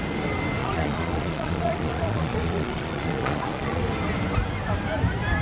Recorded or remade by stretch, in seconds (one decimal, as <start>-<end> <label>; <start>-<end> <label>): 0.0-0.6 recorded; 0.6-3.8 remade; 3.8-5.4 recorded